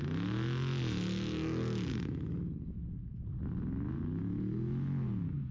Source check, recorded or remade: recorded